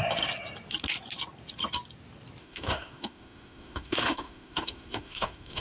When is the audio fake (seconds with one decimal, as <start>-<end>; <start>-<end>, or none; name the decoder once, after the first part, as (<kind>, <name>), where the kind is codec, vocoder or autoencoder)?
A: 2.4-5.6 (autoencoder, DAC-VAE)